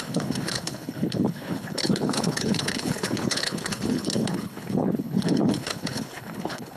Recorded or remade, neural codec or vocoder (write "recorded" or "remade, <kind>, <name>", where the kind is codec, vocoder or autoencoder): remade, codec, HILCodec